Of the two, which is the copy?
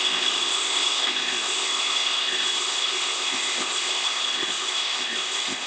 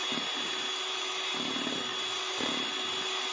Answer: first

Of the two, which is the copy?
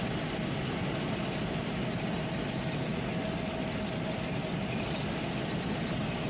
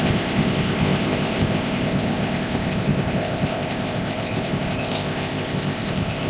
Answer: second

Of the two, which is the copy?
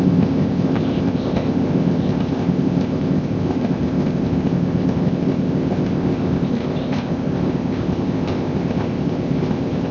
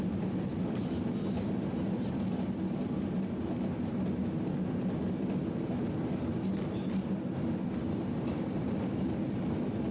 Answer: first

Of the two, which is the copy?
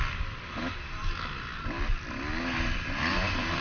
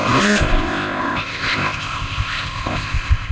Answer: second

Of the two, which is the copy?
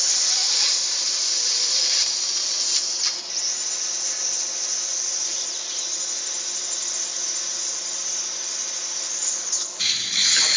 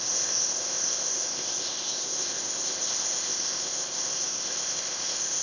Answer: second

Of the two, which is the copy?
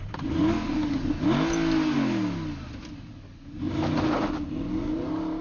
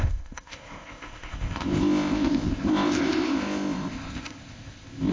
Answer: second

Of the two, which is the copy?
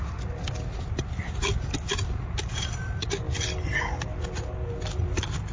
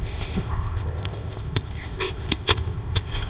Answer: second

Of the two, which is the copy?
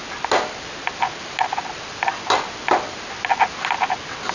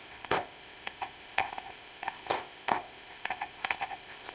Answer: second